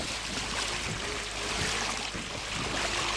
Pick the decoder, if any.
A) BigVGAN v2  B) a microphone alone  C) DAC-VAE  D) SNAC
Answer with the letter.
B